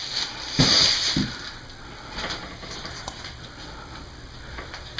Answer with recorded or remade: recorded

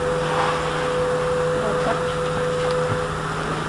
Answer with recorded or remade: recorded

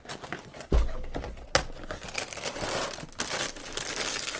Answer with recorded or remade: recorded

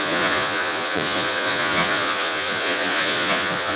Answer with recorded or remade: remade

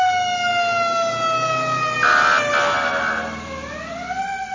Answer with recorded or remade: recorded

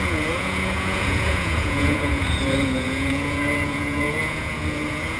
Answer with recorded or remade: remade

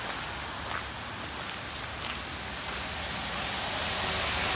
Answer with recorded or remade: recorded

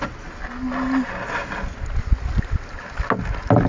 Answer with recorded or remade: recorded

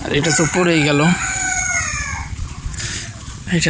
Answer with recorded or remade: remade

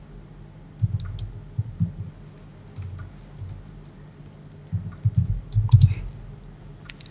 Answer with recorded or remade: recorded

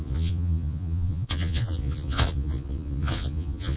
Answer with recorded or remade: remade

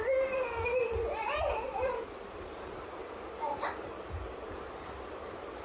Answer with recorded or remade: recorded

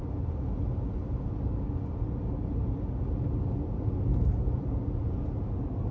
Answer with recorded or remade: recorded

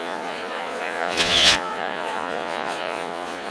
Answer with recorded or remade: remade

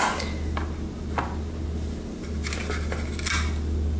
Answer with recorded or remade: recorded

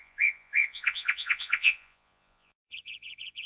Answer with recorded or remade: remade